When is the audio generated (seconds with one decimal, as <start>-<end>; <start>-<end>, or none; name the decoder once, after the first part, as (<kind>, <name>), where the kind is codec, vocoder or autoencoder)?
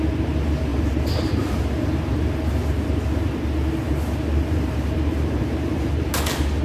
0.7-2.4 (vocoder, BigVGAN v2); 4.3-6.1